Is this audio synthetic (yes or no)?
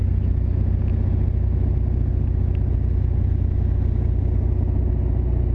no